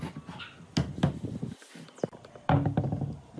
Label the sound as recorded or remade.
recorded